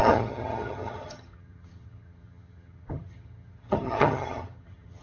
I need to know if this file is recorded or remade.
remade